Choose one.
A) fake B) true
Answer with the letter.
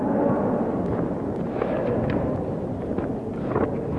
B